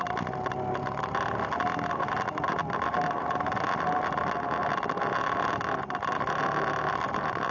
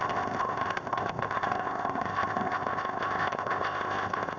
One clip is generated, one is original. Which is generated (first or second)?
second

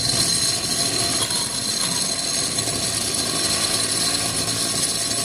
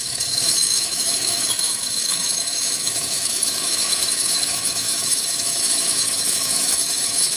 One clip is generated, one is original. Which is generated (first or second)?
second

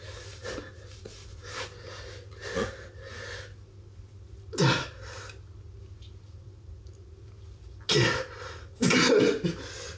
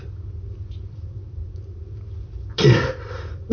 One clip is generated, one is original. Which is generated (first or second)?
second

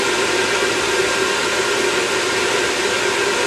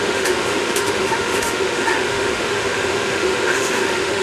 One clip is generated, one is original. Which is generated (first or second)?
second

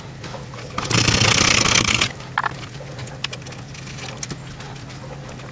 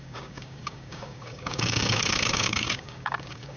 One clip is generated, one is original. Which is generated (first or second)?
second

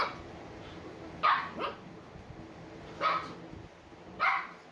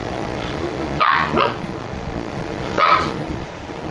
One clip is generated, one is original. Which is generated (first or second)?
second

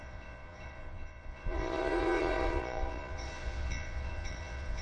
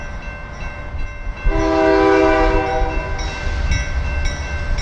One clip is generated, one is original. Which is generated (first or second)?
first